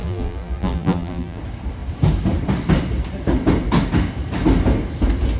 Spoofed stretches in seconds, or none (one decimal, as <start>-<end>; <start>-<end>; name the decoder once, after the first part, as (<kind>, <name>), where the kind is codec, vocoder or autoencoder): 0.0-1.4 (vocoder, BigVGAN v2)